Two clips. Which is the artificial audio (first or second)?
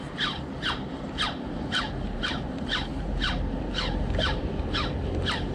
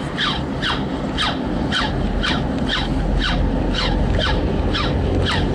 first